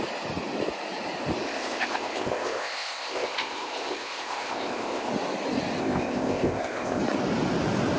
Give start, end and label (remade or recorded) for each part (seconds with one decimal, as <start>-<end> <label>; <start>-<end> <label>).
0.0-1.4 recorded; 1.4-5.1 remade; 5.1-5.8 recorded; 5.8-7.0 remade; 7.0-8.0 recorded